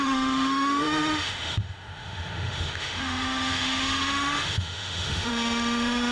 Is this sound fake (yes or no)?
yes